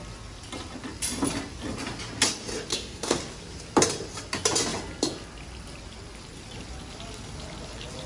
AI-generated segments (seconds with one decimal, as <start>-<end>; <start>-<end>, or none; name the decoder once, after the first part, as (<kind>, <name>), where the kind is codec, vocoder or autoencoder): 2.7-3.2 (codec, SNAC)